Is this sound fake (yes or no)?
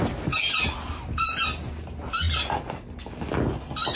no